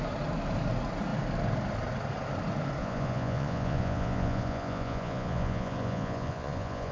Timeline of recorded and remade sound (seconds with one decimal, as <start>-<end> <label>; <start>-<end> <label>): 0.0-2.8 recorded; 2.8-6.9 remade